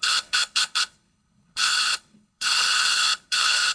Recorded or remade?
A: remade